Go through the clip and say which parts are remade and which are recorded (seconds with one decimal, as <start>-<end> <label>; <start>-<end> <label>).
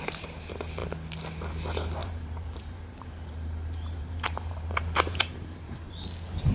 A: 0.0-2.0 recorded; 2.0-5.9 remade; 5.9-6.5 recorded